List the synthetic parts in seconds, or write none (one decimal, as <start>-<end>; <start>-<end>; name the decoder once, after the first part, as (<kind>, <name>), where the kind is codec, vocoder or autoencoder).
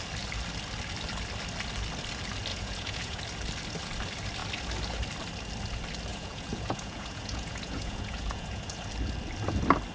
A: 2.5-3.2 (vocoder, Vocos); 6.1-8.9